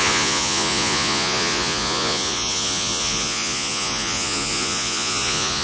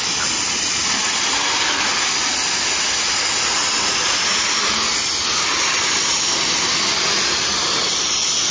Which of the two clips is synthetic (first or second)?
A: first